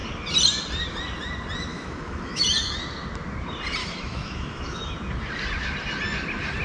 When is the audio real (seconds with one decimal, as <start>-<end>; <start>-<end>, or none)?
0.0-1.7; 2.5-3.8; 4.9-6.6